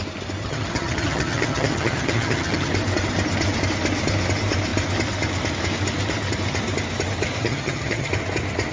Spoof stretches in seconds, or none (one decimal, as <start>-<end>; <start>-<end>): 0.4-2.7; 7.4-8.1